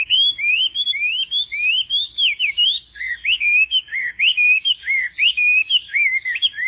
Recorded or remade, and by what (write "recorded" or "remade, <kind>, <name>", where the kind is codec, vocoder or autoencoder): remade, codec, DAC